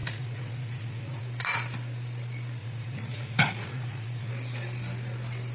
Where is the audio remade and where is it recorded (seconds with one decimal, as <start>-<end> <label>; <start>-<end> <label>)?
0.0-1.2 remade; 1.2-2.6 recorded; 2.6-4.3 remade; 4.3-5.5 recorded